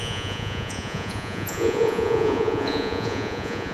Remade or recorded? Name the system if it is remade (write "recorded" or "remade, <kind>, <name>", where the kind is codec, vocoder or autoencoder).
remade, vocoder, Vocos